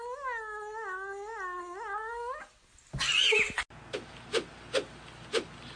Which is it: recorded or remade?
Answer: recorded